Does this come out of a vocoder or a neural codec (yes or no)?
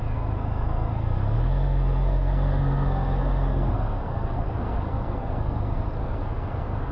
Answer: yes